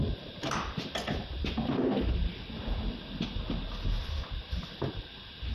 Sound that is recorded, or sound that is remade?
recorded